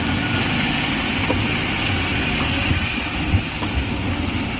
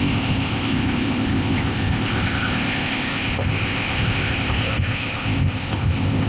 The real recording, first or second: first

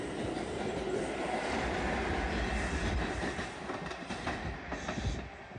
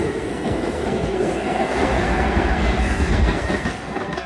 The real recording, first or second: first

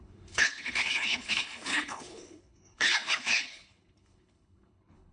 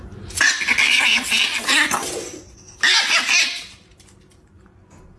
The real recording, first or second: second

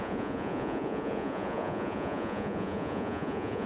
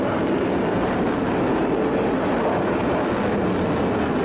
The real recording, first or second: second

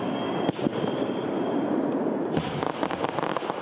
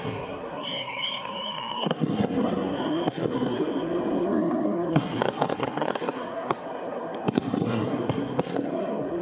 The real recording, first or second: first